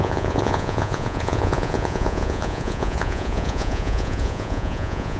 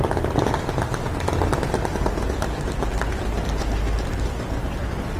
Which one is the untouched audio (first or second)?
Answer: second